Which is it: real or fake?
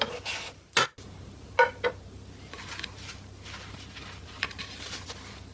real